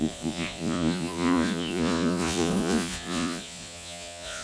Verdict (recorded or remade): remade